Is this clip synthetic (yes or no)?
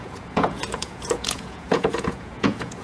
yes